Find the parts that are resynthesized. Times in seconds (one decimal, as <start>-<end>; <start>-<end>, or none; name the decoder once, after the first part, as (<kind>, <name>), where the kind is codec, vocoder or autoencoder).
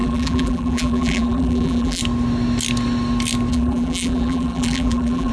0.0-2.0 (vocoder, BigVGAN v2); 3.5-5.3